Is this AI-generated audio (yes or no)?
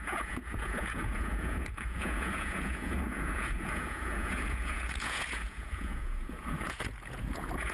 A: yes